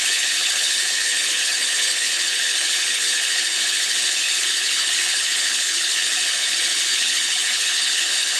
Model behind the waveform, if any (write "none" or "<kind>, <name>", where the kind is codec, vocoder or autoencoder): codec, HILCodec